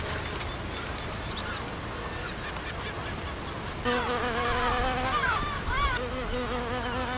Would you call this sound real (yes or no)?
yes